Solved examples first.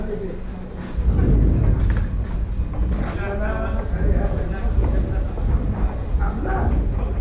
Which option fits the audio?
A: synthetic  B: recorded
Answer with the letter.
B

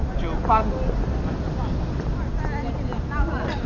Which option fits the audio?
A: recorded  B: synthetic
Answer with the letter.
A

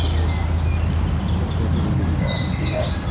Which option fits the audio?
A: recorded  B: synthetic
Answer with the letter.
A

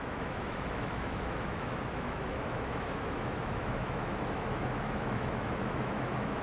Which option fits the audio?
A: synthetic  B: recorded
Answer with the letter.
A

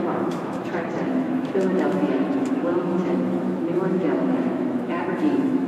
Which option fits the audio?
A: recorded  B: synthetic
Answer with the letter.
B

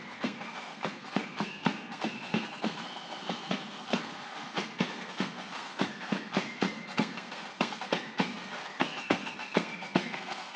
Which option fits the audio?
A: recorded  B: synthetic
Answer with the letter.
B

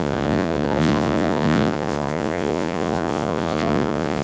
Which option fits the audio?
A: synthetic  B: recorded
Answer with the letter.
A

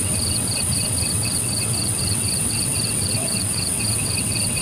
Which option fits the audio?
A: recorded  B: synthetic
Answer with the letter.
B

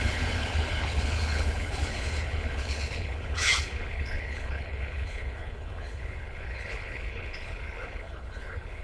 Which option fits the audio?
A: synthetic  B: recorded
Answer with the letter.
A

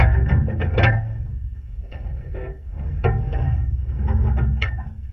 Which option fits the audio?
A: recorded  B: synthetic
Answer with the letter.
B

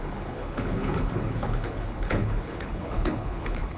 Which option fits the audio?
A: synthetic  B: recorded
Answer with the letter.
A